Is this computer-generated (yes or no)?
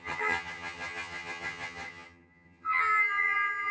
yes